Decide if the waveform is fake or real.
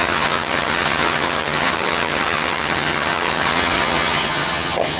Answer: fake